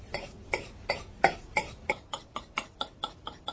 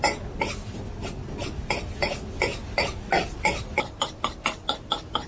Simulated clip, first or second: first